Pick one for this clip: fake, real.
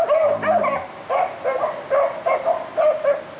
real